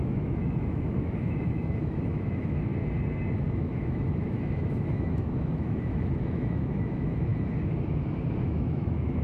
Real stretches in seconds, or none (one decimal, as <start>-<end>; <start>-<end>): 2.7-3.5; 7.3-8.4